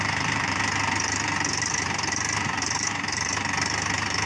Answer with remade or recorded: remade